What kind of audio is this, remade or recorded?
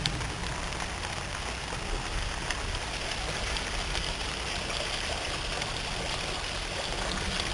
recorded